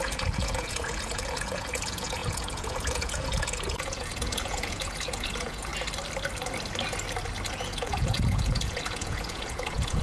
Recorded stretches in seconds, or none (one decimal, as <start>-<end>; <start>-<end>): 5.7-7.5